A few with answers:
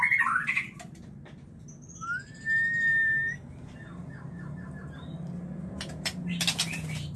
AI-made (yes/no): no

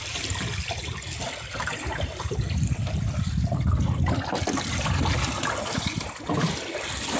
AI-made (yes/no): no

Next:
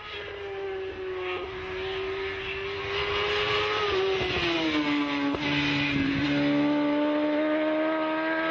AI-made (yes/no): no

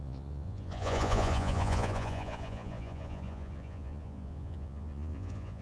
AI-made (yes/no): yes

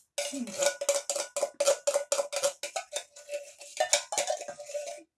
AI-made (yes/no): no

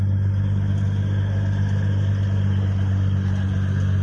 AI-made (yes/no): no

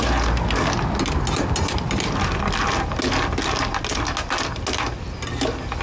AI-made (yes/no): no